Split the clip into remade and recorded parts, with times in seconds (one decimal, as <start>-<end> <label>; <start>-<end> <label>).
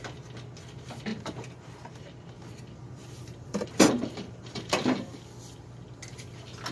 0.0-1.1 recorded; 1.1-2.2 remade; 2.2-3.0 recorded; 3.0-5.2 remade; 5.2-6.7 recorded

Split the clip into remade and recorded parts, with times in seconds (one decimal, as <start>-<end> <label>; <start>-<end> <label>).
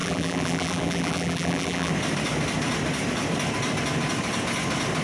0.0-1.9 remade; 1.9-5.0 recorded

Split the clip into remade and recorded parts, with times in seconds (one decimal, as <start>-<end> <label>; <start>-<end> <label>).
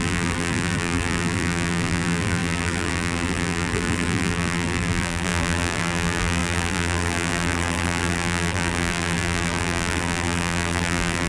0.0-11.3 remade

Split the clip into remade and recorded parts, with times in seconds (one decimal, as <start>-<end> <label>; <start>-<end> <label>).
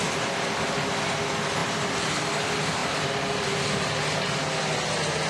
0.0-5.3 recorded